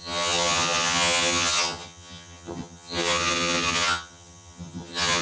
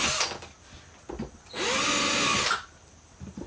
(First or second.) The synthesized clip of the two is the first